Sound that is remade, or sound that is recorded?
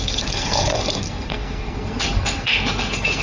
remade